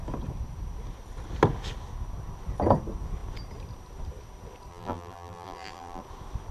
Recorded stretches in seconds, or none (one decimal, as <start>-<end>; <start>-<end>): 0.0-4.7; 6.0-6.5